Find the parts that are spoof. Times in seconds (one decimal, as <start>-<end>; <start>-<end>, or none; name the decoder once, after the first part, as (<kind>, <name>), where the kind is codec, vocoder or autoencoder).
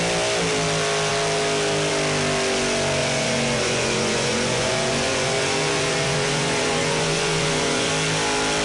3.0-7.9 (vocoder, Vocos)